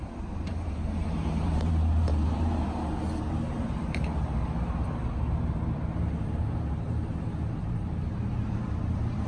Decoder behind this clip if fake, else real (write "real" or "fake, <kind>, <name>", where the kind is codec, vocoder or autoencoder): fake, vocoder, BigVGAN v2